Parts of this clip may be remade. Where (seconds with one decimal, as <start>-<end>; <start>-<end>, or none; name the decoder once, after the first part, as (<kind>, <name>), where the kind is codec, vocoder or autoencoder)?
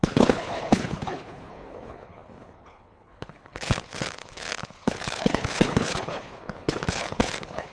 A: 0.0-7.7 (codec, HILCodec)